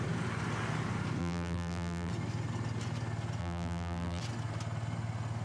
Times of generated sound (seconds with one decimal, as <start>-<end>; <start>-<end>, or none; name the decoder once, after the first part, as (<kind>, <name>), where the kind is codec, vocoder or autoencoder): 1.2-2.1 (vocoder, BigVGAN v2); 3.4-4.2